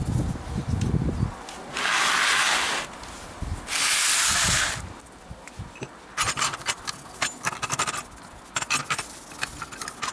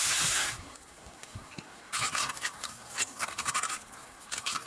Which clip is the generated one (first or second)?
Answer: second